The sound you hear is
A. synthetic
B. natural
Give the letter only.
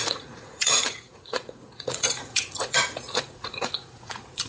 A